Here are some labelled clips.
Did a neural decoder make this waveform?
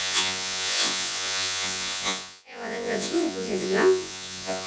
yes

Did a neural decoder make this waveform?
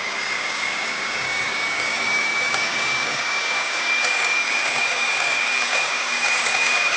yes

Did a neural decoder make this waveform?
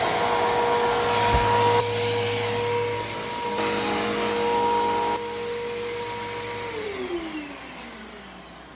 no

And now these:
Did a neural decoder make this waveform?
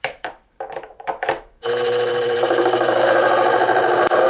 yes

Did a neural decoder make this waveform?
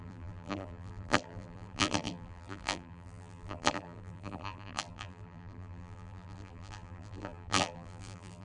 yes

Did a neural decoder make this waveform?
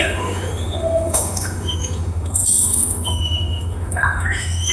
yes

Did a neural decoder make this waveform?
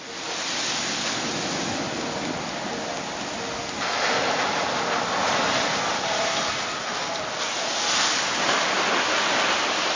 no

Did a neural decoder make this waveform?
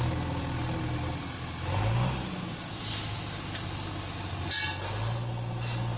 no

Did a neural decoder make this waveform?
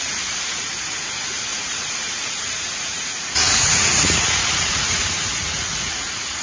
yes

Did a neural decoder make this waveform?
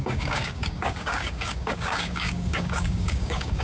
yes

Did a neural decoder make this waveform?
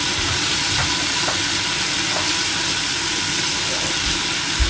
no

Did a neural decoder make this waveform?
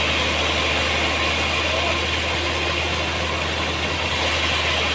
no